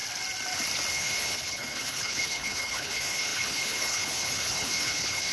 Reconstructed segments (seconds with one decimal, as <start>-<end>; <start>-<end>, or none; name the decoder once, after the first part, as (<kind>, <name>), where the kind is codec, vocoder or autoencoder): 0.9-5.3 (codec, HILCodec)